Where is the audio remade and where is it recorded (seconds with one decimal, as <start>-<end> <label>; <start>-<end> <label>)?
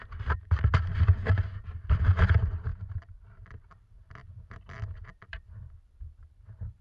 0.0-2.7 recorded; 2.7-3.7 remade; 3.7-4.2 recorded; 4.2-5.6 remade; 5.6-6.8 recorded